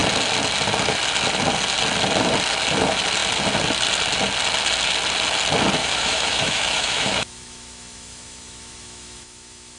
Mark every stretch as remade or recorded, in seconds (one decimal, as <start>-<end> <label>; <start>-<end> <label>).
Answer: 0.0-5.8 recorded; 5.8-9.8 remade